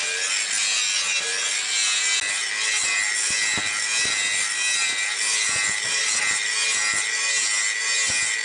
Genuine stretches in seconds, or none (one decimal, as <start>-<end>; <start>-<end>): 0.0-8.4